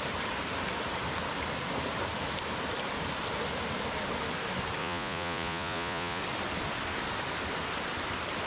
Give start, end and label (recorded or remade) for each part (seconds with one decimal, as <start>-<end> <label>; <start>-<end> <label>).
0.0-4.8 recorded; 4.8-6.2 remade; 6.2-8.5 recorded